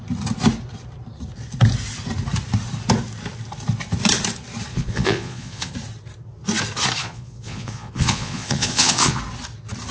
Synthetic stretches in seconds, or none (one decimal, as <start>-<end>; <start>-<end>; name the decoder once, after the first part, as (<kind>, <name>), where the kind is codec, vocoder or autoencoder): 4.7-5.7 (vocoder, Vocos); 7.0-9.2